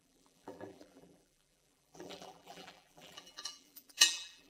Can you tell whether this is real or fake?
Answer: fake